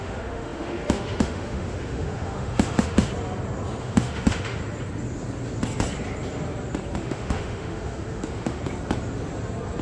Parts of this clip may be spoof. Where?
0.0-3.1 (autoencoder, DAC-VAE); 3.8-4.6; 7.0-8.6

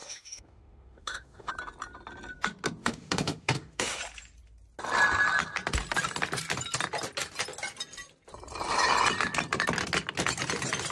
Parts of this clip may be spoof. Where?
0.0-1.5 (autoencoder, DAC-VAE); 2.8-4.0

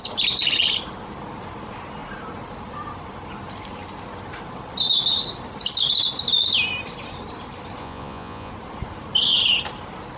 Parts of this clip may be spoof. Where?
7.8-8.5 (vocoder, Vocos)

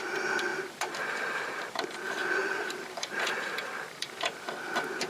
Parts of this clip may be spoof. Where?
0.5-1.8 (vocoder, BigVGAN v2); 2.4-4.5

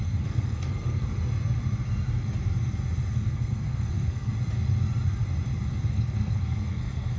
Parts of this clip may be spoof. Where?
0.0-1.1 (codec, SNAC); 3.1-4.3; 5.9-7.2

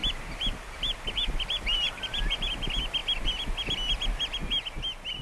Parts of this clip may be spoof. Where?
0.0-2.3 (vocoder, BigVGAN v2)

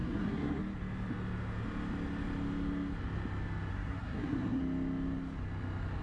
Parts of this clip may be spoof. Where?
0.0-0.6 (codec, SNAC); 3.7-4.6